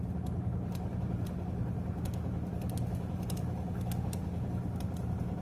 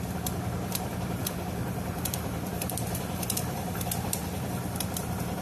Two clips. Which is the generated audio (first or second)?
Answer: second